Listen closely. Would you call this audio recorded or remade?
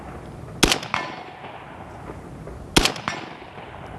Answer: recorded